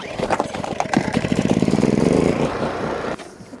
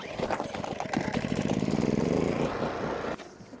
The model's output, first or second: first